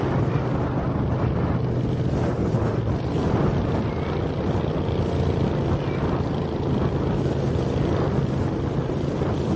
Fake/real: real